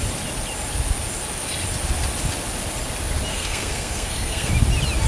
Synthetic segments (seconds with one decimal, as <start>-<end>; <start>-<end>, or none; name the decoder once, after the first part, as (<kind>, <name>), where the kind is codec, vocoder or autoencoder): 3.3-4.5 (codec, SNAC)